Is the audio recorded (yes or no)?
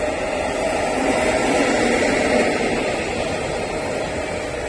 yes